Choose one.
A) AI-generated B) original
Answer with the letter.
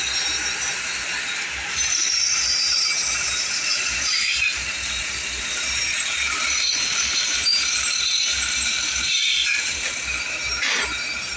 A